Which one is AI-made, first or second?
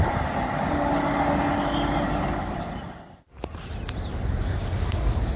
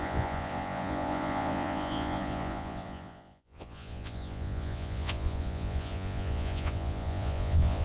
second